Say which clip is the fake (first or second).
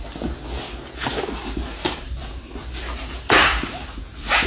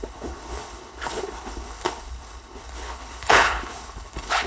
second